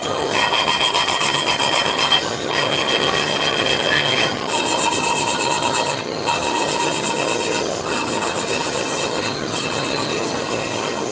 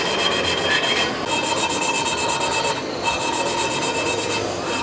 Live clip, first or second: second